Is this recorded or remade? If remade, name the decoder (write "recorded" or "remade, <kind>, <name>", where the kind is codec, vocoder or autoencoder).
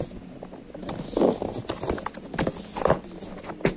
recorded